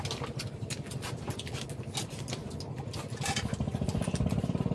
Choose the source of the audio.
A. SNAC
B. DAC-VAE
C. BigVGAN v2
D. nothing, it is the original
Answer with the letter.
D